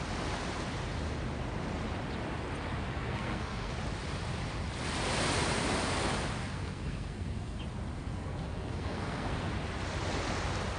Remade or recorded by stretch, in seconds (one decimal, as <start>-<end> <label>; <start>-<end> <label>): 0.0-2.9 recorded; 2.9-3.7 remade; 3.7-6.4 recorded; 6.4-7.6 remade; 7.6-8.0 recorded; 8.0-9.5 remade; 9.5-10.8 recorded

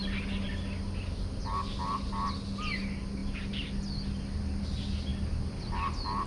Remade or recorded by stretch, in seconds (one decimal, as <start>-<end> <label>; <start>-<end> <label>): 0.0-6.3 recorded

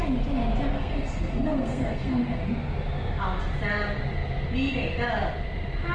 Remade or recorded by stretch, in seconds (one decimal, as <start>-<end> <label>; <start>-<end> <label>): 0.0-0.7 recorded; 0.7-2.4 remade; 2.4-5.9 recorded

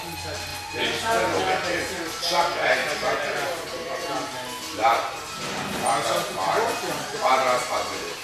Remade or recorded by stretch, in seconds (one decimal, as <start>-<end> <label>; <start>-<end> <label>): 0.0-8.2 recorded

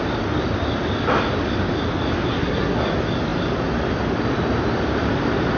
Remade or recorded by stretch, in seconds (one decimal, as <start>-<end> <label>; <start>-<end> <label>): 0.0-2.3 recorded; 2.3-2.8 remade; 2.8-5.6 recorded